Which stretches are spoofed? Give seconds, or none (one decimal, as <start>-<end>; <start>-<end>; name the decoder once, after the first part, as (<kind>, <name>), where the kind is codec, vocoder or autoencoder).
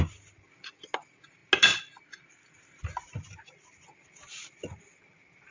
none